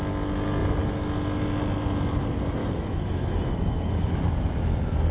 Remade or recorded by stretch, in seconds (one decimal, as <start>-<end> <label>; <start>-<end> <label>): 0.0-2.6 recorded; 2.6-4.2 remade; 4.2-5.1 recorded